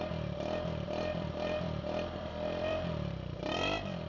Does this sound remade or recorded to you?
remade